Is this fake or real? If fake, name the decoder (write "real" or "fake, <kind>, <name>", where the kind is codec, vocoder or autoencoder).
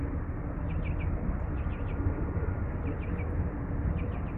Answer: real